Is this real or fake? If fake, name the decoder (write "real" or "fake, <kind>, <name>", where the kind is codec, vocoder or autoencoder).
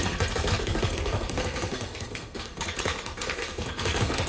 fake, codec, SNAC